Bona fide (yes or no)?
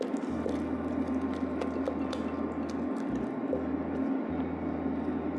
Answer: yes